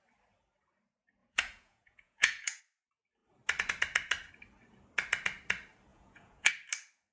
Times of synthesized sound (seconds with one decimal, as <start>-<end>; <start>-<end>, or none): 1.2-2.6; 5.9-6.5